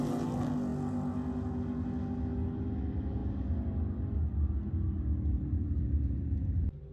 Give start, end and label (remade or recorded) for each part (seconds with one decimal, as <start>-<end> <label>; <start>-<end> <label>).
0.0-6.9 recorded